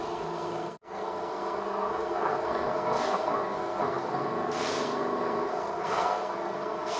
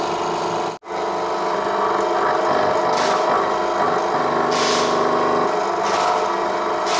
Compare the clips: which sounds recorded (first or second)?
second